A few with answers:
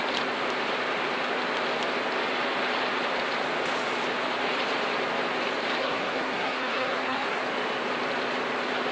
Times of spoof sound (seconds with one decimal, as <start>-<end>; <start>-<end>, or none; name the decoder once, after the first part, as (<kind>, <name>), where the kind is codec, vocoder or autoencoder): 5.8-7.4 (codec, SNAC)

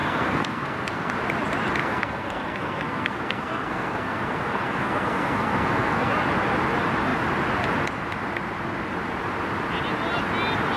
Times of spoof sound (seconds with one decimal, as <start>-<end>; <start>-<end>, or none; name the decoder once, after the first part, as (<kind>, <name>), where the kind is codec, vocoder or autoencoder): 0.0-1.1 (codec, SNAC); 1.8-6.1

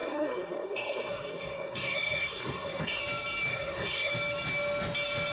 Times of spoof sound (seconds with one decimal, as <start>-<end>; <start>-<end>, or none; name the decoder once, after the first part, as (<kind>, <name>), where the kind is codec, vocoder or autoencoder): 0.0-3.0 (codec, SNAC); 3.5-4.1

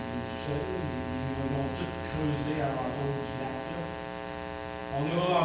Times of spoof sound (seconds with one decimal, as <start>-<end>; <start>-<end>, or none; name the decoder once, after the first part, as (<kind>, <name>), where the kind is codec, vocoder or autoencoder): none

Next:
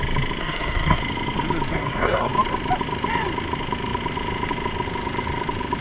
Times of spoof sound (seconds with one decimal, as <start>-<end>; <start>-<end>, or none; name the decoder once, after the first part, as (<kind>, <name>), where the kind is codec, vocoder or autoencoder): 0.4-1.0 (codec, SNAC); 1.7-2.3

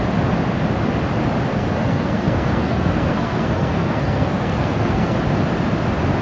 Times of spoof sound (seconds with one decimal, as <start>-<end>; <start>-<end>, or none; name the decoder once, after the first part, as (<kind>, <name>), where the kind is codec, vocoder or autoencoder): 1.5-5.2 (codec, SNAC)